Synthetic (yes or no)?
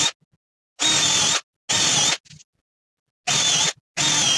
no